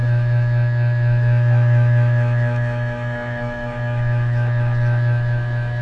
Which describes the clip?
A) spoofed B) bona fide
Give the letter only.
A